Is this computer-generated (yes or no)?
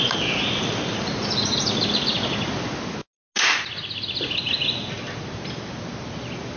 no